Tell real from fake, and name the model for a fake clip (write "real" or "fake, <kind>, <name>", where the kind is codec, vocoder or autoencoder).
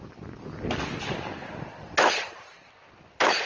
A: real